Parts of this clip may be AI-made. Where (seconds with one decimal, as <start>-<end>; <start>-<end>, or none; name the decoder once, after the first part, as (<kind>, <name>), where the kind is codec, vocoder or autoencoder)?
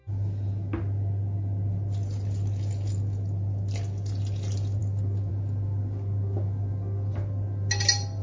none